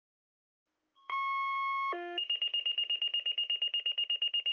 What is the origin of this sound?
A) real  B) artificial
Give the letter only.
B